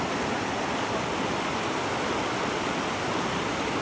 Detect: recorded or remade recorded